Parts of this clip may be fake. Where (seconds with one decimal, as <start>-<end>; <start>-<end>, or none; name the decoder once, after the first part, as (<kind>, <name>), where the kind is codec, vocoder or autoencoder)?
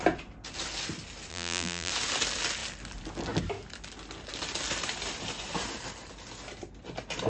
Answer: 1.3-1.9 (vocoder, BigVGAN v2)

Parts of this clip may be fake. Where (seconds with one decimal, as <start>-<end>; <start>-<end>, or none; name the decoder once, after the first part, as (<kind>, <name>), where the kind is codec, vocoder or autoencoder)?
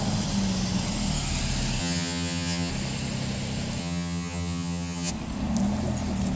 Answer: 1.8-2.7 (vocoder, HiFi-GAN); 3.8-5.1